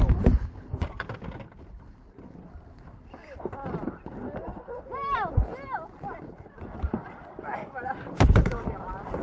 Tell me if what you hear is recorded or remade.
recorded